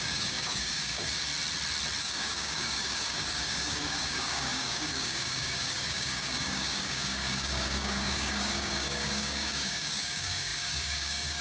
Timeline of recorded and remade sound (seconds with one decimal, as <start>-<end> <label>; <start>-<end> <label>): 0.0-1.3 remade; 1.3-2.0 recorded; 2.0-11.4 remade